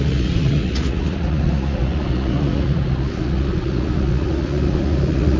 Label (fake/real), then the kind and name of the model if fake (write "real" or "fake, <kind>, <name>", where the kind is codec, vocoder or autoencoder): fake, vocoder, Vocos